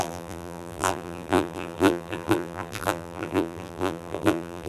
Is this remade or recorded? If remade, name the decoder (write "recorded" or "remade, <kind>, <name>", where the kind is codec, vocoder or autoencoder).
remade, vocoder, BigVGAN v2